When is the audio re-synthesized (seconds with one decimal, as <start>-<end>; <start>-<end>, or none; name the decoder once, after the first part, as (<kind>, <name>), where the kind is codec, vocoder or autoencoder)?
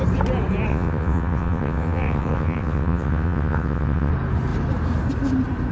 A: 0.7-4.1 (vocoder, WaveNeXt)